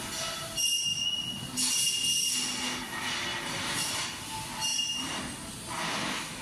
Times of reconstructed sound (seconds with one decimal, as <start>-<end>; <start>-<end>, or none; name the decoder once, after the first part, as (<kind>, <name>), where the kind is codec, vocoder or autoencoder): 3.3-3.9 (vocoder, BigVGAN v2); 4.7-5.2